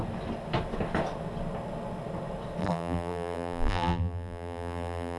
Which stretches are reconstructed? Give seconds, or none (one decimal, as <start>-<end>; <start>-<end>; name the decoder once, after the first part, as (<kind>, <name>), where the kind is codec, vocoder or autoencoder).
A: 2.6-5.2 (vocoder, BigVGAN v2)

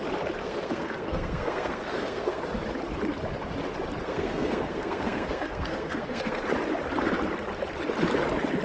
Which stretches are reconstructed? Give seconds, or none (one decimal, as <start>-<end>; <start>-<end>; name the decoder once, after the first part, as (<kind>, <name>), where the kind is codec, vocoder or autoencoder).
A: 0.4-2.4 (codec, SNAC); 4.0-6.4

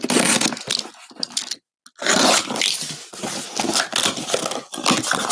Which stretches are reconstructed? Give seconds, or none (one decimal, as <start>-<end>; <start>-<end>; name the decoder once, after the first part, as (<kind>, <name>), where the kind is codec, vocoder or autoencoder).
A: none

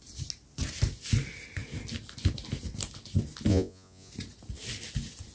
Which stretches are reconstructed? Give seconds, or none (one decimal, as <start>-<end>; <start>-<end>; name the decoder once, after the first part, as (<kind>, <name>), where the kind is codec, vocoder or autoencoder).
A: 3.5-4.1 (vocoder, Vocos)

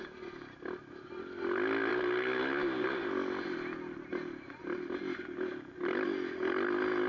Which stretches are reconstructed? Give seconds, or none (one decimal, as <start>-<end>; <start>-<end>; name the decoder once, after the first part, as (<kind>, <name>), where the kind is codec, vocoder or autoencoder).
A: none

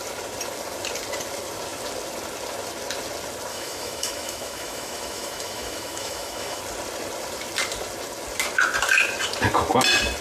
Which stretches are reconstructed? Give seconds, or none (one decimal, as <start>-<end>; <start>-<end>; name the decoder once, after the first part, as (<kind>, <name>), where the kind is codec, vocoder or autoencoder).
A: 3.5-6.6 (autoencoder, DAC-VAE)

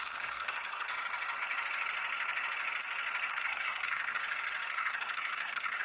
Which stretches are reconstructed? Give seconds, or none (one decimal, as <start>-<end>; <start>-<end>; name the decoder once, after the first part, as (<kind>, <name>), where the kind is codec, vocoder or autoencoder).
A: 0.0-0.9 (codec, SNAC); 3.3-4.2; 4.7-5.8